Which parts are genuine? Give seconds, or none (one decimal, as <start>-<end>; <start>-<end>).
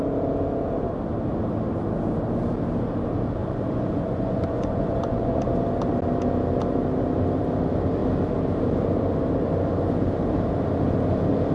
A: 0.0-3.4; 5.4-11.5